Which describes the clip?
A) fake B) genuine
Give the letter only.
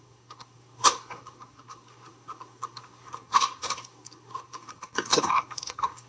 A